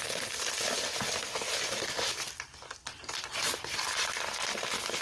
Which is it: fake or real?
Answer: real